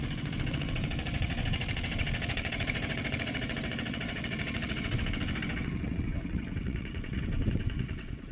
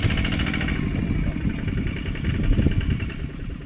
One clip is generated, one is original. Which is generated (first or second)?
first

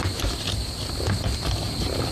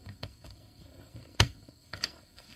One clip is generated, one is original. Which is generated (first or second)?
second